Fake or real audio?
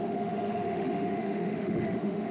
fake